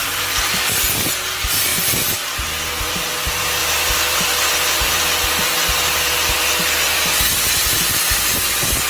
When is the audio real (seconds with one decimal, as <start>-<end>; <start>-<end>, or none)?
1.7-2.8